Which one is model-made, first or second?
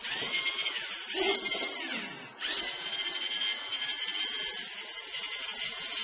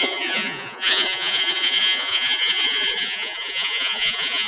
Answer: second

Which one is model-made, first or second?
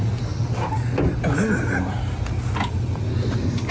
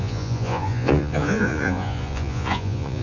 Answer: second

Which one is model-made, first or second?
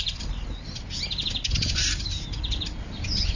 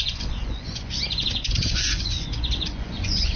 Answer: second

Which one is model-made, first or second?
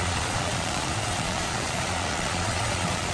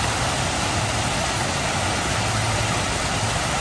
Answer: first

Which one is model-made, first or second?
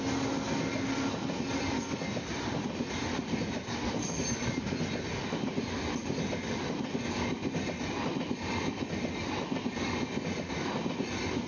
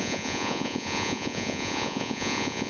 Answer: second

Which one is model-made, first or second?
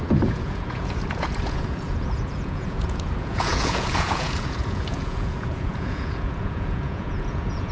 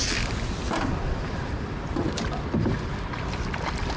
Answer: first